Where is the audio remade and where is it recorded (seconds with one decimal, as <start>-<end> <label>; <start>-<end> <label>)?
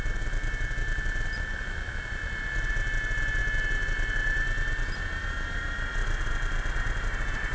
0.0-7.5 recorded